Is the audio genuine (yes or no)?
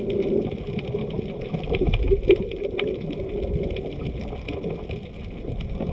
yes